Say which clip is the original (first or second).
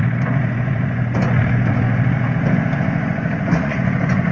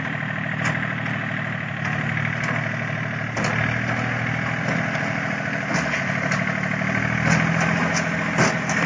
second